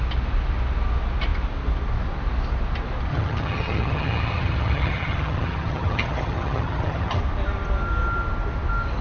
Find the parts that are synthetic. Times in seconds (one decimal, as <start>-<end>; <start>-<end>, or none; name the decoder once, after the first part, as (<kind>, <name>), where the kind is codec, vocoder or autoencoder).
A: 3.1-7.2 (vocoder, HiFi-GAN)